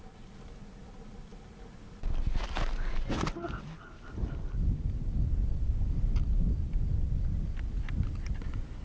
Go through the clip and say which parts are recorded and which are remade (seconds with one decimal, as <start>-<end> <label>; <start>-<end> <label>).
0.0-8.8 recorded